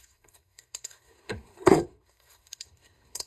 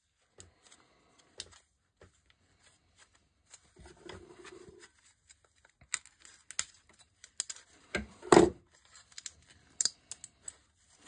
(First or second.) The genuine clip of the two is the second